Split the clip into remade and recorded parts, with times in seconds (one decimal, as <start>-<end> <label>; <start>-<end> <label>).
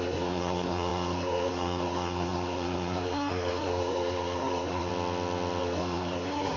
0.0-4.9 remade; 4.9-5.6 recorded; 5.6-6.6 remade